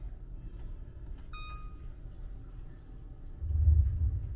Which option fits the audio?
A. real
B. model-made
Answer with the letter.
A